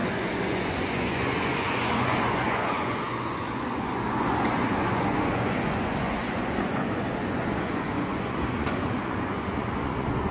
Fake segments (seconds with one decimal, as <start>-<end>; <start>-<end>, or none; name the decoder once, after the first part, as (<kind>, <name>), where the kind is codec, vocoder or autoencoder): 0.0-10.3 (vocoder, Vocos)